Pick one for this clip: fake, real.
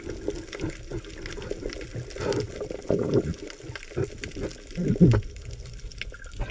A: real